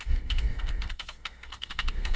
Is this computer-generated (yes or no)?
yes